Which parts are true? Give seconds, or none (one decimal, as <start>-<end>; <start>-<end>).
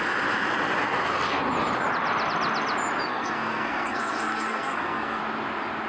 0.0-3.1; 5.2-5.9